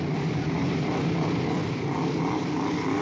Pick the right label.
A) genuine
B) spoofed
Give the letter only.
A